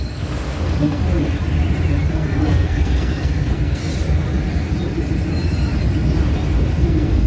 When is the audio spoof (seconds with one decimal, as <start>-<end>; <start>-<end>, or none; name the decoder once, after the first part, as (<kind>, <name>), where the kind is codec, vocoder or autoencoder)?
0.0-1.0 (codec, SNAC); 2.1-3.9; 6.7-7.3